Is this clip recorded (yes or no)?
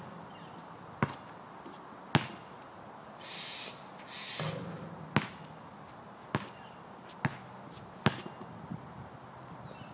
yes